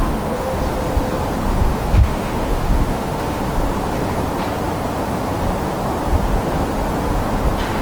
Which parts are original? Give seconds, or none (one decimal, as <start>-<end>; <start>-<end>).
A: 0.6-1.5; 3.4-7.8